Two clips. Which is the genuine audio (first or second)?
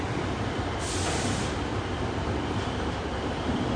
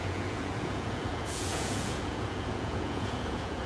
first